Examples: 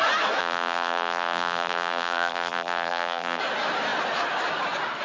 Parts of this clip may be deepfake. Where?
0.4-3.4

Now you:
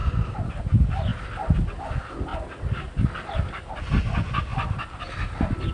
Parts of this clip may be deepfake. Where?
none

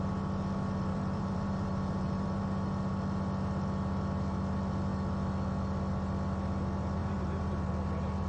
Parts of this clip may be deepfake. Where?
0.9-2.4; 7.0-7.7

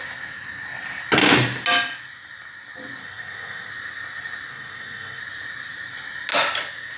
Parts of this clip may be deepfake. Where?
3.0-3.7; 4.5-5.2

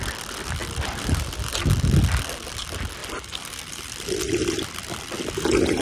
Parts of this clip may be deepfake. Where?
3.0-5.0

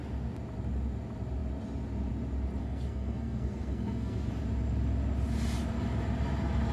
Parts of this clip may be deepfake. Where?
2.6-4.3